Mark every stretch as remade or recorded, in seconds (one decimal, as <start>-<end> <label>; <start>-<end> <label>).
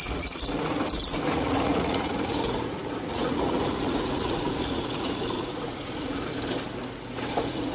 0.0-6.3 remade; 6.3-7.3 recorded; 7.3-7.7 remade